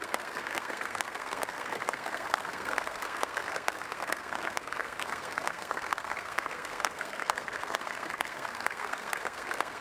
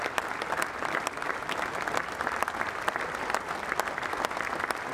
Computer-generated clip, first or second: first